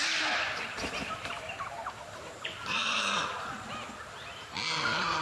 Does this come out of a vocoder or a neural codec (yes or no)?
yes